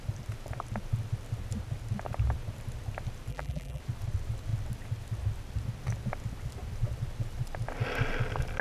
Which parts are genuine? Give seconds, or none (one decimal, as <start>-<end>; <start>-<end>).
0.0-3.3; 3.8-8.6